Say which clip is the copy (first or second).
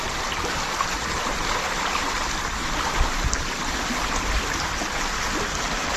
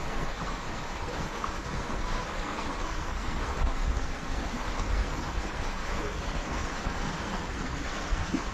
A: second